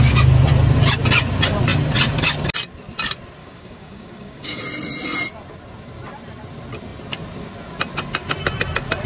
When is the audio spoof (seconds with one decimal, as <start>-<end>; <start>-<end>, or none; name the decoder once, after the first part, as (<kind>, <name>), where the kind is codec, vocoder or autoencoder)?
3.4-4.6 (codec, DAC)